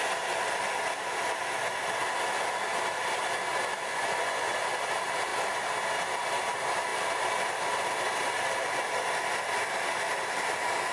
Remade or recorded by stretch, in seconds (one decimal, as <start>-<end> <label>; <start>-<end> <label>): 0.0-3.9 recorded; 3.9-4.5 remade; 4.5-10.9 recorded